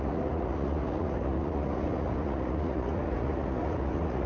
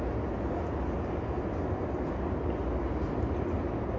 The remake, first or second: first